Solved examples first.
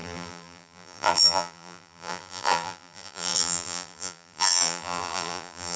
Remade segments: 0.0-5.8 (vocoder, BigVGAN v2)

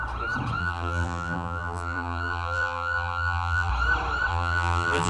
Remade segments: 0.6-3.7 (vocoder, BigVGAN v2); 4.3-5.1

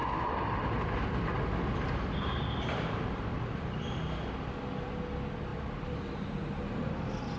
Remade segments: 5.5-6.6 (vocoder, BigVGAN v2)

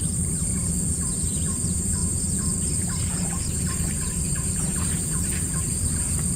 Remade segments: 0.0-6.4 (vocoder, BigVGAN v2)